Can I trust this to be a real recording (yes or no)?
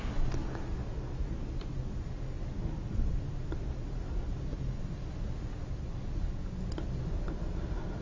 yes